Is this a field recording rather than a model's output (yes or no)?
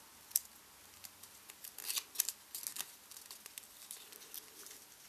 yes